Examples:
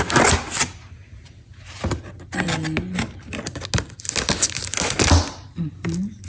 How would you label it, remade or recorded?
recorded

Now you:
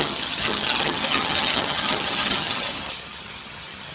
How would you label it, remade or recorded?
remade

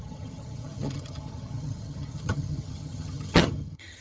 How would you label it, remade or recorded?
remade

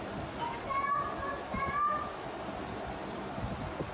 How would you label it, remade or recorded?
recorded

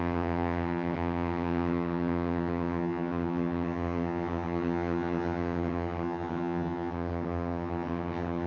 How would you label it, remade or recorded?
remade